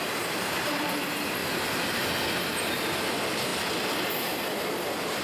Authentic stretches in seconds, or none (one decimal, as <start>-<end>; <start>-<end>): 0.0-1.4; 2.0-5.2